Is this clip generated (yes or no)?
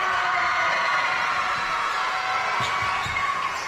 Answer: yes